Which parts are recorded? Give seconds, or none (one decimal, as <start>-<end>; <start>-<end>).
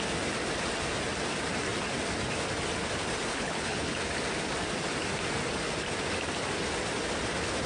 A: 0.0-3.3; 4.1-7.7